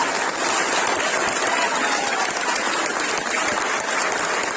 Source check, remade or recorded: recorded